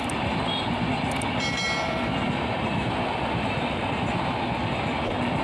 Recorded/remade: recorded